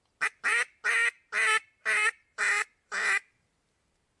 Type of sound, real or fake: real